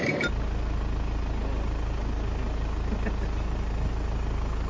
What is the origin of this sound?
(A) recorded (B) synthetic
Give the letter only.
A